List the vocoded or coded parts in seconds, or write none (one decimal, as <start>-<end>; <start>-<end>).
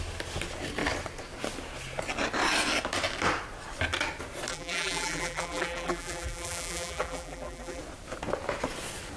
4.5-7.8